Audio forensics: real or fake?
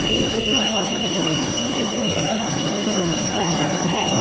fake